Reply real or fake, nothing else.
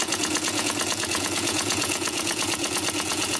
fake